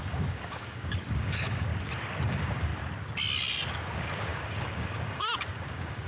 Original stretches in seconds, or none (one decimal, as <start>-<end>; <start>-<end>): 1.7-2.2; 2.7-3.7